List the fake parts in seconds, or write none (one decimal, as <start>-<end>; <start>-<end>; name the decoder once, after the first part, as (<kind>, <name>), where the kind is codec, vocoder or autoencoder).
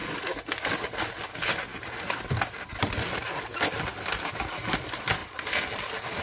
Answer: 1.7-3.8 (vocoder, BigVGAN v2)